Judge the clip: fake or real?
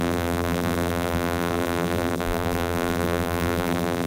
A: fake